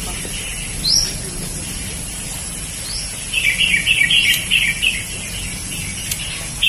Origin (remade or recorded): recorded